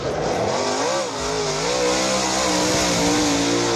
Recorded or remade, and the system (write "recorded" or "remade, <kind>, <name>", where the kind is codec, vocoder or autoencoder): recorded